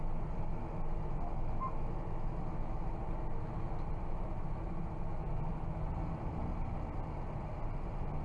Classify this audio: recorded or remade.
recorded